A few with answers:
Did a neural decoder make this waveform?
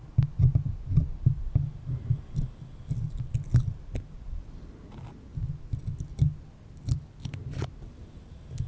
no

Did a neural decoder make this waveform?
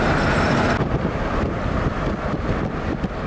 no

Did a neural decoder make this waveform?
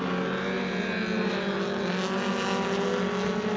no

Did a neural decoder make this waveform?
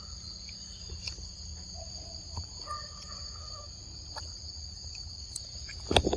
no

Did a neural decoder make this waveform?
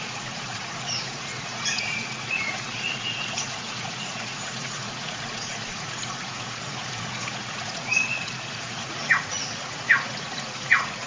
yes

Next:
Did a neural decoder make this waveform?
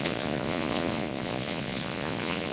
yes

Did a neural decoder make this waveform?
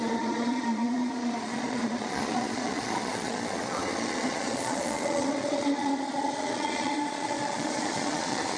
yes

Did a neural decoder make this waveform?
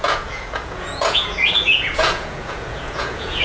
yes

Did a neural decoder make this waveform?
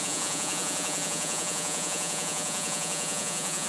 yes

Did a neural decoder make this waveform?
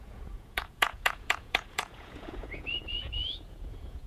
yes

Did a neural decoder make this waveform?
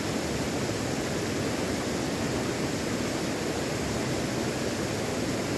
no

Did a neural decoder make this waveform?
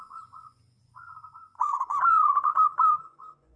yes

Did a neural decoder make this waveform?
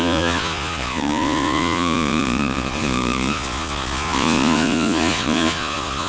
yes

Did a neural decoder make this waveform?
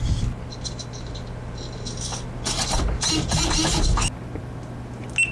no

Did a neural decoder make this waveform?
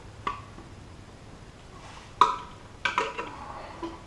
no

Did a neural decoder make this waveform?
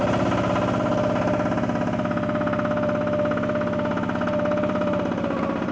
no